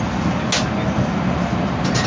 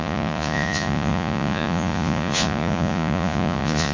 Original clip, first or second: first